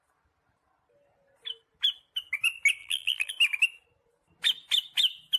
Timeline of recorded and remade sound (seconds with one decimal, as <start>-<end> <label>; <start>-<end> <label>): 0.0-2.8 recorded; 2.8-3.3 remade; 3.3-5.4 recorded